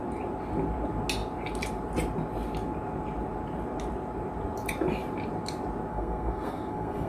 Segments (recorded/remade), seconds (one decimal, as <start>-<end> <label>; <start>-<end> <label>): 0.0-5.9 recorded; 5.9-7.1 remade